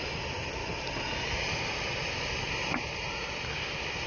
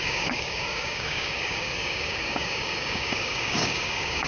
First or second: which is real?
first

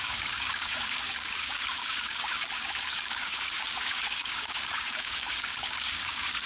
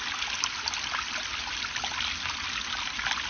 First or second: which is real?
second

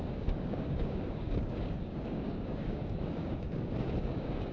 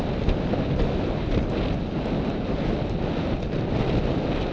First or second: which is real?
second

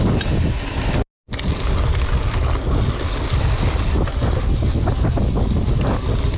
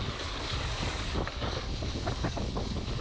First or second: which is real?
first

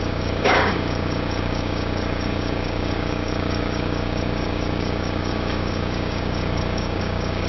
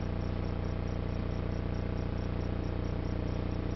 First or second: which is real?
second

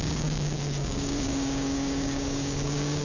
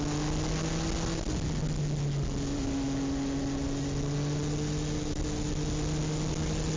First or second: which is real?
second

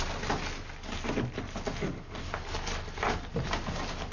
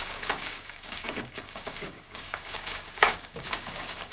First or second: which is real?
first